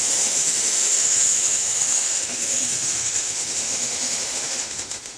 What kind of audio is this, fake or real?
fake